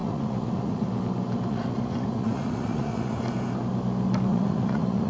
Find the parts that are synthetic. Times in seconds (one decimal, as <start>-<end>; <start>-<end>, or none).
0.0-0.9; 1.5-3.2; 4.3-5.1